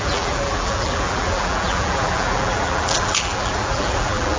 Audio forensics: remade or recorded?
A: remade